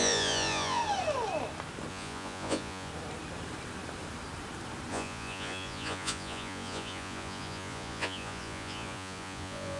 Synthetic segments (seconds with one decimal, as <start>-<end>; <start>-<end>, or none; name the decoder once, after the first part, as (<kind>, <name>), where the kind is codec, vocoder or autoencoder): 0.0-0.8 (vocoder, Vocos); 1.9-2.9; 4.9-9.8